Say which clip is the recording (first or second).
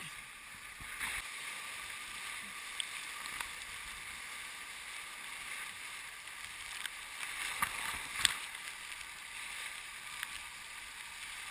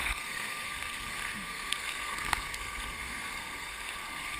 first